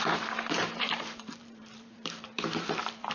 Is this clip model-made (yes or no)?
yes